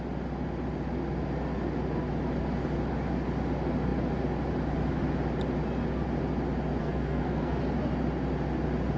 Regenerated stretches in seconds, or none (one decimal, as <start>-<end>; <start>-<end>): 6.8-7.6